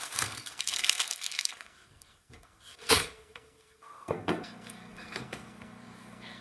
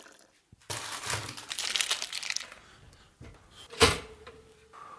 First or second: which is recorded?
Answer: second